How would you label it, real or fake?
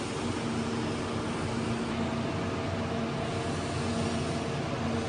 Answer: real